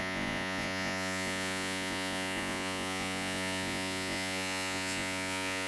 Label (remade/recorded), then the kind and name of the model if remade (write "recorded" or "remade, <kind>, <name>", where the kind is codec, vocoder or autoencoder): remade, vocoder, Vocos